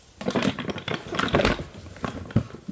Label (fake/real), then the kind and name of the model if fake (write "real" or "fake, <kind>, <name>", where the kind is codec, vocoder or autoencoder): real